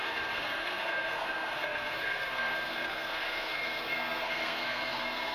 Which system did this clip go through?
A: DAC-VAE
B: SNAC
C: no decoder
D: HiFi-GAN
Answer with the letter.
B